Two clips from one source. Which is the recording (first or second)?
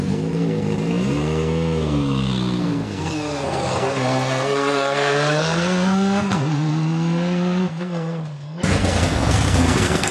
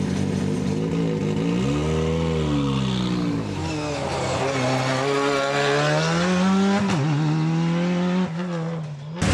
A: second